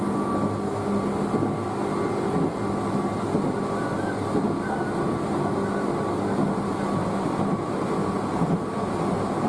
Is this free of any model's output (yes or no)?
yes